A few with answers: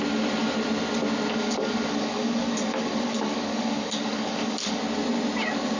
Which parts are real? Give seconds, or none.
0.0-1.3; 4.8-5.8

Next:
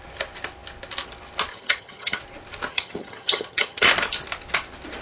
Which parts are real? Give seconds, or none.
0.0-1.5; 2.2-2.7; 3.9-5.0